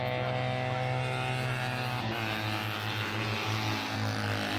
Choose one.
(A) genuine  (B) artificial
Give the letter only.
A